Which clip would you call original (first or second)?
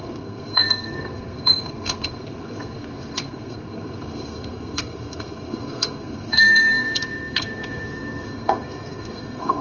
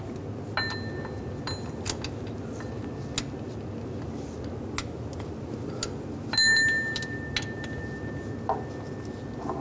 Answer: second